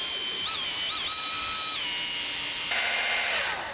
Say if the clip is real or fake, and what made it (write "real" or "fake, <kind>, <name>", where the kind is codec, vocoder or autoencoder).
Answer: real